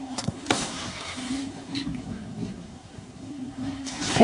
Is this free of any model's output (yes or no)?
no